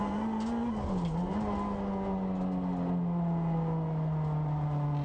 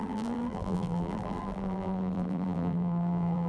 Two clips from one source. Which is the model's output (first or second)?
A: second